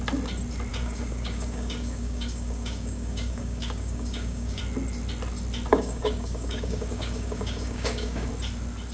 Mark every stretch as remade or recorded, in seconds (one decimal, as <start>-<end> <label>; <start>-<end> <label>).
0.0-0.7 recorded; 0.7-4.6 remade; 4.6-5.7 recorded; 5.7-8.3 remade; 8.3-8.9 recorded